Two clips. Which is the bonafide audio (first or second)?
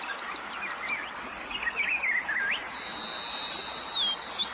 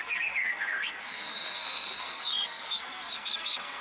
first